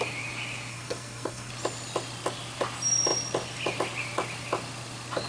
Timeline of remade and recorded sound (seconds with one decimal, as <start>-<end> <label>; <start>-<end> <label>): 0.0-0.7 recorded; 0.7-1.5 remade; 1.5-5.3 recorded